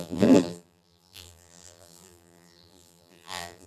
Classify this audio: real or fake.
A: fake